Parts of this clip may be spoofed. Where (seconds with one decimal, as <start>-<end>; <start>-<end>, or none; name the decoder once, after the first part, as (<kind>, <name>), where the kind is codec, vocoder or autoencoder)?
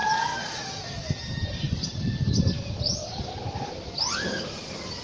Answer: 0.0-0.8 (vocoder, BigVGAN v2); 1.4-3.9